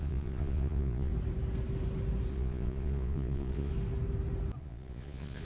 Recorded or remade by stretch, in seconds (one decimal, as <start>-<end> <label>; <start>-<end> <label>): 0.0-1.1 remade; 1.1-2.3 recorded; 2.3-3.7 remade; 3.7-4.6 recorded; 4.6-5.4 remade